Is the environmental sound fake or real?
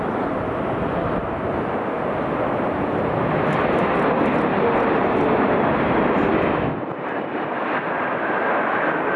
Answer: real